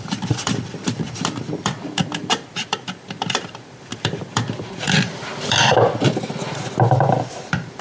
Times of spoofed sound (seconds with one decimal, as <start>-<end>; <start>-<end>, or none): 0.0-7.8